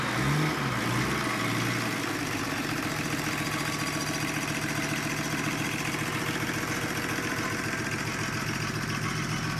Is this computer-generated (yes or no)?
no